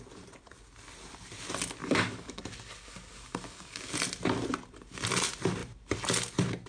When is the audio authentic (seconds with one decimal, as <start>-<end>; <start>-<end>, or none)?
0.0-1.8; 3.9-6.7